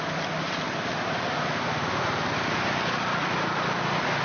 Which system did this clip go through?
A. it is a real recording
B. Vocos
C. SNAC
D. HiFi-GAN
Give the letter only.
A